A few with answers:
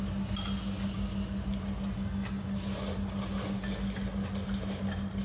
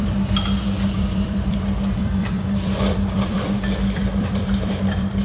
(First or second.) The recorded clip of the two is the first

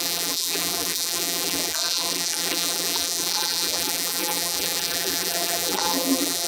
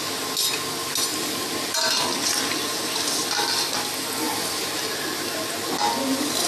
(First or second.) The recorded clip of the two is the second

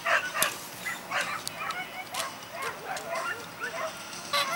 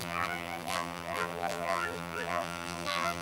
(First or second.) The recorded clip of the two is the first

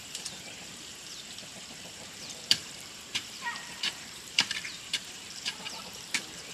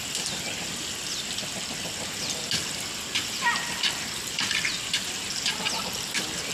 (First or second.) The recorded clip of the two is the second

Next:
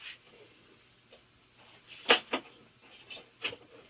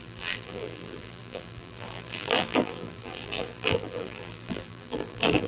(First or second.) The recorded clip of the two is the first